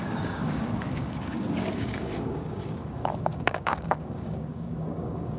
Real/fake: fake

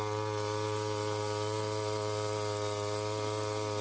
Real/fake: real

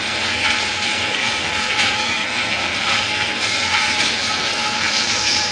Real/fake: fake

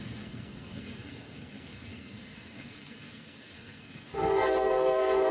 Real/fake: fake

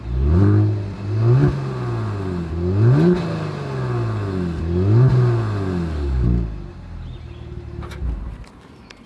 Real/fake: real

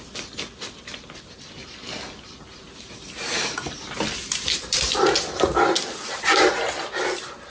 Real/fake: real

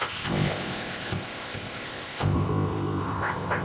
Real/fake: fake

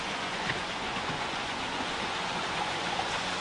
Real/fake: fake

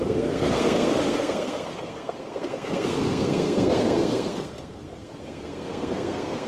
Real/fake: fake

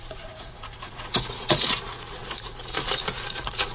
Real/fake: fake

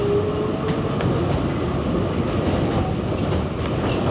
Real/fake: real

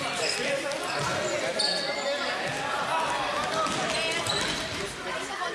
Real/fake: real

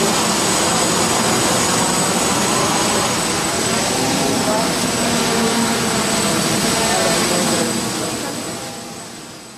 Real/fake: real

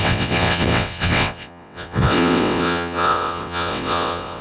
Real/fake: fake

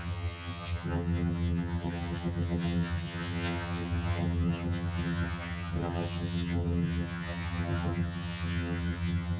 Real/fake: fake